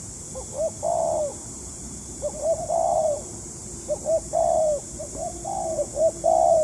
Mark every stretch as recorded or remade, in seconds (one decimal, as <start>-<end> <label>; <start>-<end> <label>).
0.0-1.3 recorded; 1.3-5.1 remade; 5.1-6.6 recorded